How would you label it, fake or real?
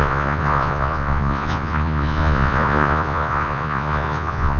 fake